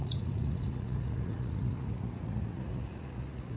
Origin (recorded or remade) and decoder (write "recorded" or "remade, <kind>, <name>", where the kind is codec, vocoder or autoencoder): remade, vocoder, Vocos